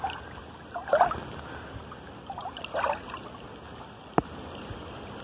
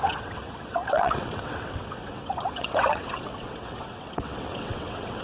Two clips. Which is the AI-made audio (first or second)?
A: second